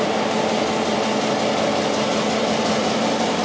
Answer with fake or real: real